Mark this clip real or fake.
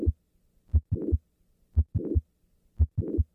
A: real